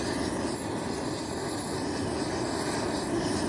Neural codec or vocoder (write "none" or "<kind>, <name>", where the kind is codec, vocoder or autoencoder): none